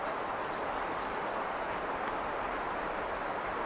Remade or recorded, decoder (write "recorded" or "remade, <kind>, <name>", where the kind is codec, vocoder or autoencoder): recorded